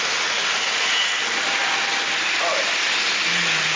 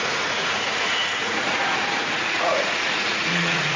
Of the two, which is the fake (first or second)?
second